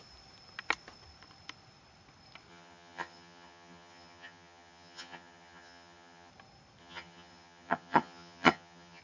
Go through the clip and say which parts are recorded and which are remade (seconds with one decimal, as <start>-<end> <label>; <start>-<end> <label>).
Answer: 0.0-2.5 recorded; 2.5-6.3 remade; 6.3-6.8 recorded; 6.8-9.0 remade